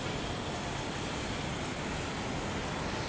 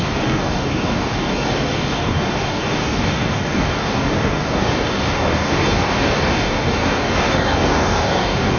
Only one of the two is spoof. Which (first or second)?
second